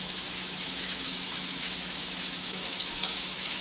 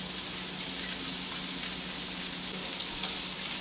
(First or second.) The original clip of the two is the second